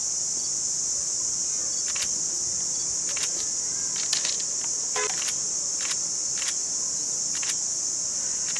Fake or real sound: real